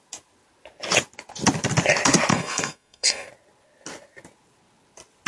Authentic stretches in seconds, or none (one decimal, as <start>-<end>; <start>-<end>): 0.0-2.3; 3.3-5.3